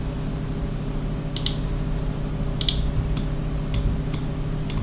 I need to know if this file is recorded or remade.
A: recorded